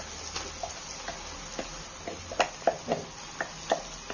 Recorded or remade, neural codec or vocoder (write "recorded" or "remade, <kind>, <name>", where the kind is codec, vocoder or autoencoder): recorded